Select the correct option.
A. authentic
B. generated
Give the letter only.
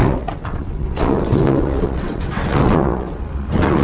B